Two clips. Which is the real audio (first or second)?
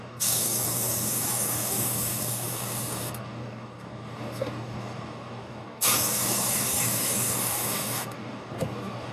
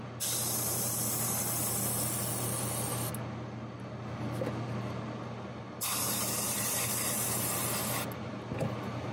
second